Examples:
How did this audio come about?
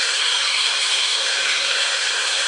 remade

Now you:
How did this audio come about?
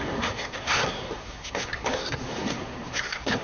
remade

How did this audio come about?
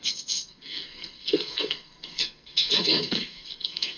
remade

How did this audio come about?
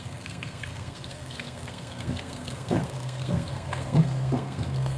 remade